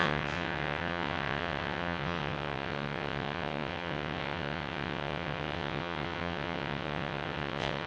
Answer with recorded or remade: remade